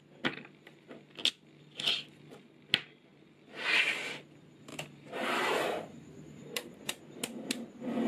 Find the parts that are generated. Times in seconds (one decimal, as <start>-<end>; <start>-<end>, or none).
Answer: 4.7-7.0